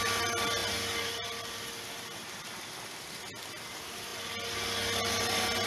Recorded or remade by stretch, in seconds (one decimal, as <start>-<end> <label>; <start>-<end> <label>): 0.0-5.7 recorded